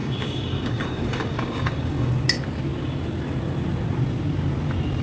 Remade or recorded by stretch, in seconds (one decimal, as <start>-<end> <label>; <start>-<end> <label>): 0.0-2.1 remade; 2.1-5.0 recorded